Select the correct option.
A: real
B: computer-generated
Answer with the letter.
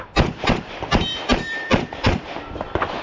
B